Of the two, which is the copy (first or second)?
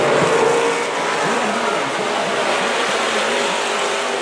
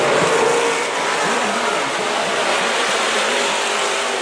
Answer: second